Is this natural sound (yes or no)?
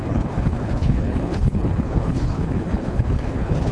no